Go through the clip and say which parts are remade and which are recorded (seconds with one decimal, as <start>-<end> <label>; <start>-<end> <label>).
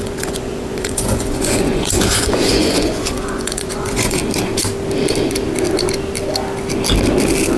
0.0-4.2 remade; 4.2-7.6 recorded